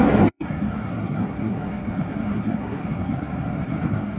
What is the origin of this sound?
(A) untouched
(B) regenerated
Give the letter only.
B